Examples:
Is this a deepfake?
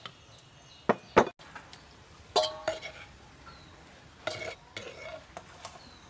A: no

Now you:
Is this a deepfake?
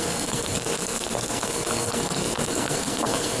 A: yes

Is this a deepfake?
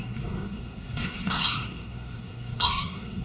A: yes